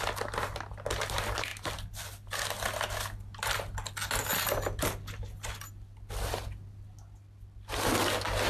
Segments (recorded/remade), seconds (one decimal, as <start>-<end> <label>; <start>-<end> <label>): 0.0-8.5 recorded